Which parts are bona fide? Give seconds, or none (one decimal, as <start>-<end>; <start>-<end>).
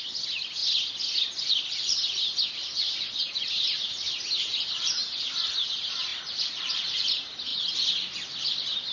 0.6-1.5